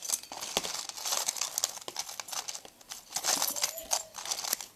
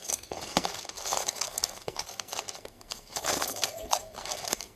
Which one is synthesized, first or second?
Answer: second